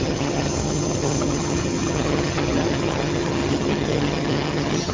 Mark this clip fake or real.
fake